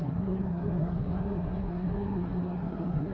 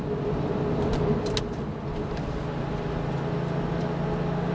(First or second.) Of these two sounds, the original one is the second